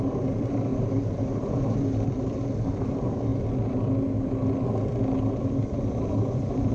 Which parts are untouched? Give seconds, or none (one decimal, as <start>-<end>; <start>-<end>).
3.3-6.1